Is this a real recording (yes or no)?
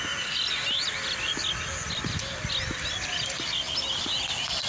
yes